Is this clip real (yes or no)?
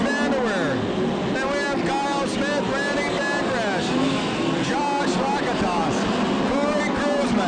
yes